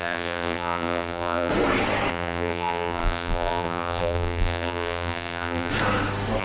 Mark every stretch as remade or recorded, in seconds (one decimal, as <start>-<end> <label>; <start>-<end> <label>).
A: 0.0-1.5 remade; 1.5-2.1 recorded; 2.1-5.7 remade; 5.7-6.4 recorded